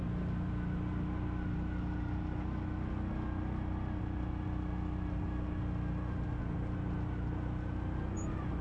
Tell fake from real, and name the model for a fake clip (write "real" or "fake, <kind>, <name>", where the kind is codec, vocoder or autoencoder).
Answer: real